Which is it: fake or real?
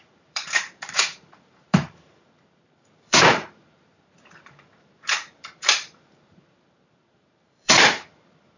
fake